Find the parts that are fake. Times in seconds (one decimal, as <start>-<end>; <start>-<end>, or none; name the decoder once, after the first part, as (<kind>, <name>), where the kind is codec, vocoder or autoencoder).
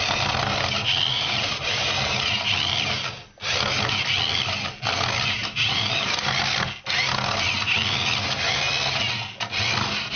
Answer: 1.1-2.2 (vocoder, BigVGAN v2); 5.4-6.1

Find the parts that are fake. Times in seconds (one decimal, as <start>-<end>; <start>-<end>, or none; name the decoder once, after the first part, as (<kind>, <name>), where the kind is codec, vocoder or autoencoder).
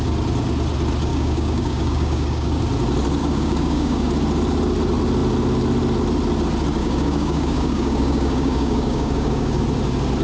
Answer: 1.1-2.6 (codec, DAC); 3.2-4.1; 6.8-9.6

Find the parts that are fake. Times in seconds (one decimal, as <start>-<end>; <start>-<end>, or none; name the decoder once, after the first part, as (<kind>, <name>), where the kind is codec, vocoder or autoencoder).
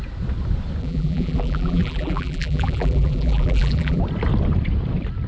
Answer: 0.8-4.0 (vocoder, BigVGAN v2)